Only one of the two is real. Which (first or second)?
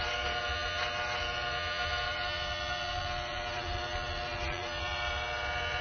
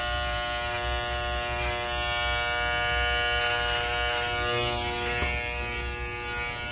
second